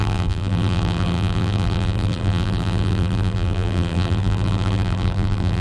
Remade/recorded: remade